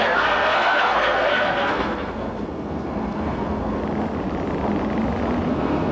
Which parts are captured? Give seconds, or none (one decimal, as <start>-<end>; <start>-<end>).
3.8-5.5